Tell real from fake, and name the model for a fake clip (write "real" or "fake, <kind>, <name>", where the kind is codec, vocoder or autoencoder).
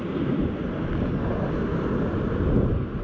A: real